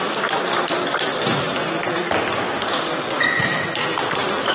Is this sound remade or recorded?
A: recorded